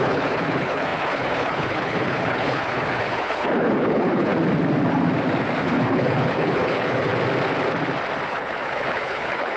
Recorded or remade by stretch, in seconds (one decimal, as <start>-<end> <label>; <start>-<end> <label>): 0.0-4.3 remade; 4.3-5.6 recorded; 5.6-7.1 remade; 7.1-8.3 recorded; 8.3-9.6 remade